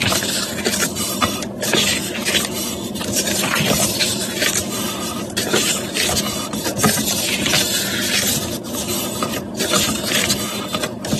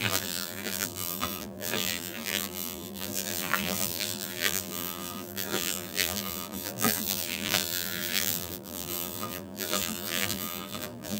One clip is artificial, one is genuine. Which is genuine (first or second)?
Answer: first